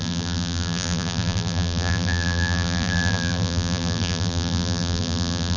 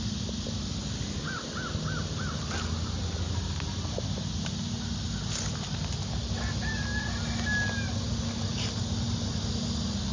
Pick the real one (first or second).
second